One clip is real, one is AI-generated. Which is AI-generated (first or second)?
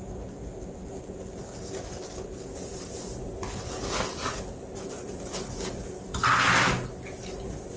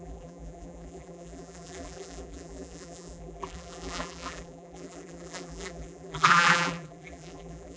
second